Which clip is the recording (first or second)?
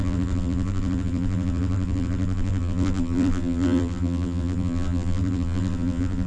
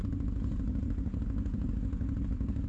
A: second